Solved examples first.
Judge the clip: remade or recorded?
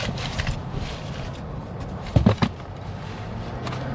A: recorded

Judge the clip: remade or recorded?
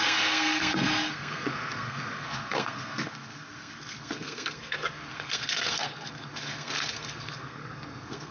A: remade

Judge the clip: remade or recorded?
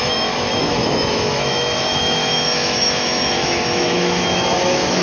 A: remade